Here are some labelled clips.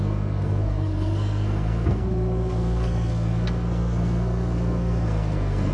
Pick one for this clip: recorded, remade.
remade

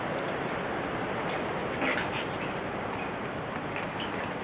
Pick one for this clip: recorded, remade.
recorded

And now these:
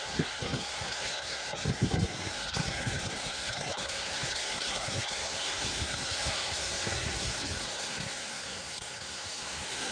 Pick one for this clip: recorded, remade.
remade